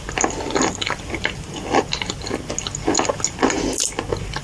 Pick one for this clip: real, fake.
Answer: real